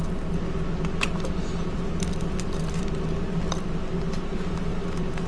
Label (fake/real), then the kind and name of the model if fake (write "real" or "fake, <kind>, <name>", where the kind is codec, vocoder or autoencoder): real